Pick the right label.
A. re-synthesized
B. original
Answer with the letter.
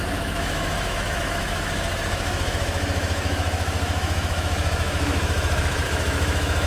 A